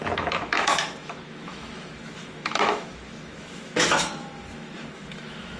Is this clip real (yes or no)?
no